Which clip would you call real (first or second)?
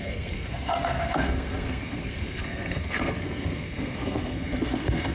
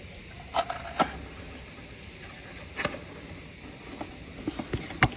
second